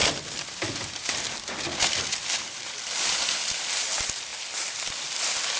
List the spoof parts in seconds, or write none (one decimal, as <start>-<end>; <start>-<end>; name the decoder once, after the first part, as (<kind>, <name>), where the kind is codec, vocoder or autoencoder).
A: none